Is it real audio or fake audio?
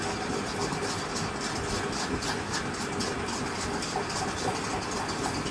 real